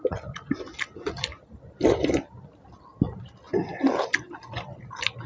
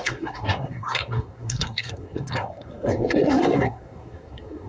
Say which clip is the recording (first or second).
first